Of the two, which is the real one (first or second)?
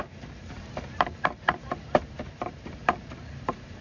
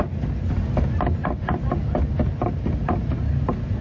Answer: second